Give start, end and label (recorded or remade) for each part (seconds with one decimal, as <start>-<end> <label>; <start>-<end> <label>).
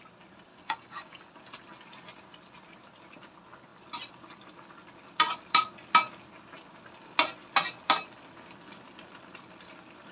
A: 0.0-0.5 recorded; 0.5-1.2 remade; 1.2-10.1 recorded